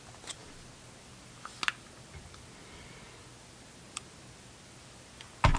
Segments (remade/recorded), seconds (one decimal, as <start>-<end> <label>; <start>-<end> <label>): 0.0-5.6 recorded